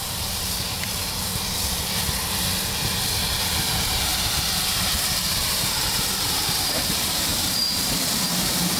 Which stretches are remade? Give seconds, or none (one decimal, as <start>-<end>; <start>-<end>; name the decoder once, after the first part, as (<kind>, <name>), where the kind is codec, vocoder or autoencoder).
0.0-1.3 (vocoder, BigVGAN v2); 3.2-8.8